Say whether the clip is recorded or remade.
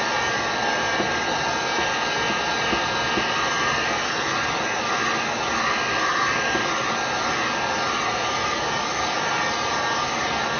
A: recorded